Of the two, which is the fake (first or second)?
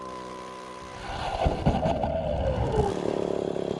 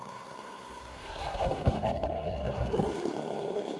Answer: second